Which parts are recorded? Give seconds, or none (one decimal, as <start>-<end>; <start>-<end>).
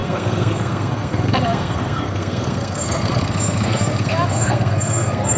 none